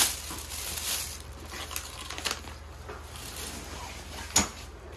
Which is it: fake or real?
real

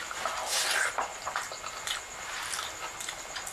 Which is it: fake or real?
real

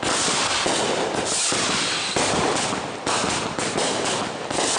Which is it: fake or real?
real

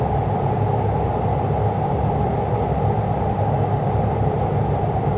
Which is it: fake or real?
real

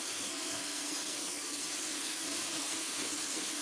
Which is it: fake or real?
fake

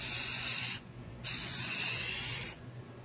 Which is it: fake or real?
fake